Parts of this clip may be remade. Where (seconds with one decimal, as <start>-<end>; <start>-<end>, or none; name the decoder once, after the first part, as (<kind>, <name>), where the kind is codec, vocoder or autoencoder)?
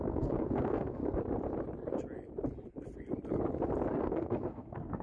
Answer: 0.0-1.0 (codec, SNAC); 4.0-5.0